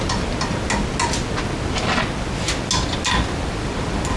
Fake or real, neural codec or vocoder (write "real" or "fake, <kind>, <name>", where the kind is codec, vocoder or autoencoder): real